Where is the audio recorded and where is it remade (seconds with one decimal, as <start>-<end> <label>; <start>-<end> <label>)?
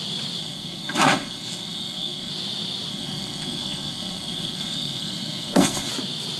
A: 0.0-0.4 recorded; 0.4-2.3 remade; 2.3-2.9 recorded; 2.9-5.9 remade; 5.9-6.4 recorded